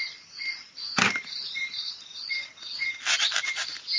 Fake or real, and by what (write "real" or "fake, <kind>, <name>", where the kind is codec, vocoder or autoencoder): real